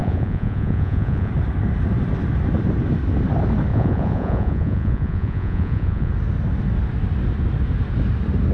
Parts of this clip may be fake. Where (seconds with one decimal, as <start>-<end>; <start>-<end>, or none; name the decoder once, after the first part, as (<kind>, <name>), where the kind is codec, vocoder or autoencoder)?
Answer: 0.0-1.3 (vocoder, Vocos); 3.7-6.1